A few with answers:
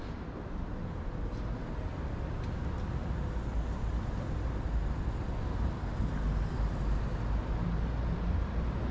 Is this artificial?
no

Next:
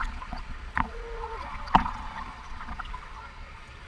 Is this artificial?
yes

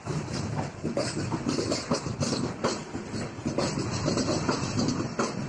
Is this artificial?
no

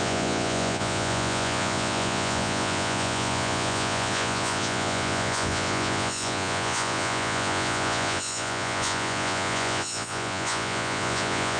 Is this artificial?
yes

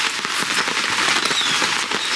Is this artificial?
no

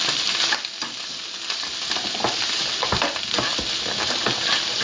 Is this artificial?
no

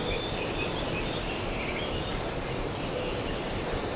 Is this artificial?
no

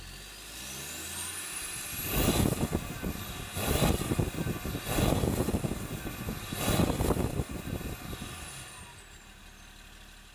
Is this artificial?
no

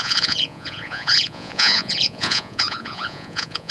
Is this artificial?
yes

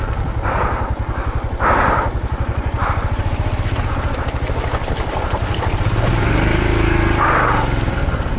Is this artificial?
no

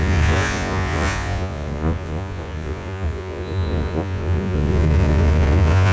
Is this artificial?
yes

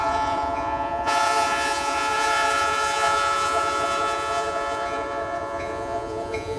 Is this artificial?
yes